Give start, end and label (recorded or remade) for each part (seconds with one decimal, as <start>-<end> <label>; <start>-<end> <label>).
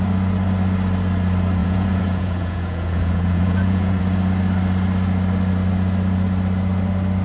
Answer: 0.0-1.6 recorded; 1.6-4.0 remade; 4.0-7.2 recorded